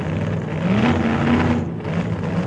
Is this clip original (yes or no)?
yes